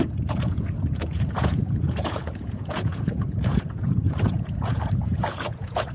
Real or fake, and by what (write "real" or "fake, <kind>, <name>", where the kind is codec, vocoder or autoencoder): fake, vocoder, Vocos